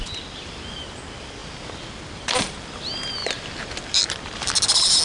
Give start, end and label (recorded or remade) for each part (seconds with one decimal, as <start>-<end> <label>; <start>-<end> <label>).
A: 0.0-5.0 recorded